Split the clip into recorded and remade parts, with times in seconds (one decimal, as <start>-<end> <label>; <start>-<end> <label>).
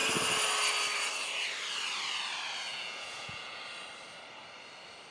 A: 0.0-2.7 recorded; 2.7-3.6 remade; 3.6-5.1 recorded